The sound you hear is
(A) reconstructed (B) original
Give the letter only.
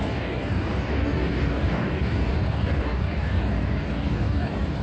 A